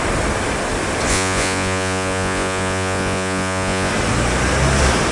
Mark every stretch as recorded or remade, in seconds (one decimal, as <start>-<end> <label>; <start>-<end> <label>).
0.0-1.1 recorded; 1.1-3.9 remade; 3.9-5.1 recorded

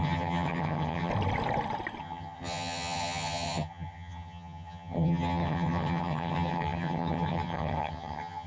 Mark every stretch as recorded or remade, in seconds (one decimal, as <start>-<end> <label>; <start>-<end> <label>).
0.0-1.1 remade; 1.1-2.0 recorded; 2.0-8.5 remade

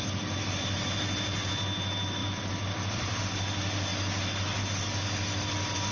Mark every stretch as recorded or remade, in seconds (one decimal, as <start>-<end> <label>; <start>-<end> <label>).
0.0-2.2 recorded; 2.2-3.2 remade; 3.2-5.9 recorded

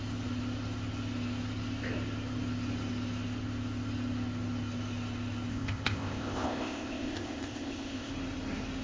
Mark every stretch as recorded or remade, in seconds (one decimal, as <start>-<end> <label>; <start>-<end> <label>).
0.0-5.5 recorded; 5.5-8.1 remade; 8.1-8.8 recorded